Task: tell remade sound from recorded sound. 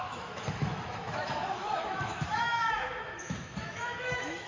remade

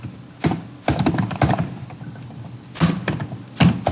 recorded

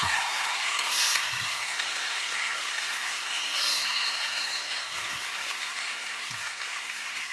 remade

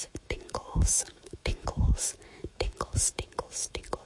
remade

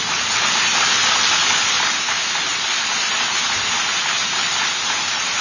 recorded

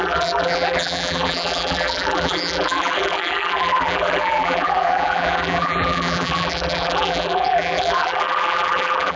remade